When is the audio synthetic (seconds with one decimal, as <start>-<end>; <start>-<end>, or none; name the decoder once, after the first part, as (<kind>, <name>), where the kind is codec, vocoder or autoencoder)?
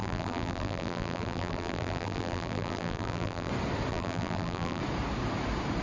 0.0-3.5 (vocoder, BigVGAN v2); 3.9-4.8